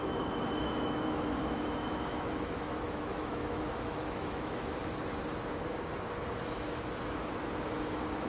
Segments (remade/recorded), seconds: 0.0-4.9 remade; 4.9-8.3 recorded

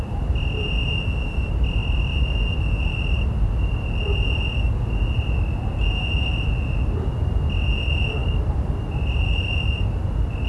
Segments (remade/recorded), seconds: 0.0-8.2 recorded; 8.2-8.7 remade; 8.7-10.5 recorded

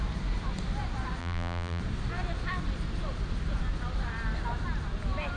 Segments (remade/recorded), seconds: 0.0-1.2 recorded; 1.2-1.8 remade; 1.8-5.4 recorded

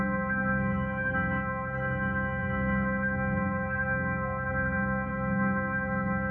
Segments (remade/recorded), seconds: 0.0-6.3 remade